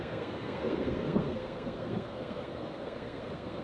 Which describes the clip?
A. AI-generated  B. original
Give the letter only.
A